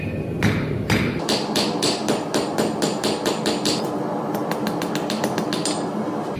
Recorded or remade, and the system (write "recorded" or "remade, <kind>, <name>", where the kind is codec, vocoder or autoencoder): recorded